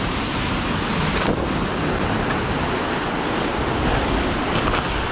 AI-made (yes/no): no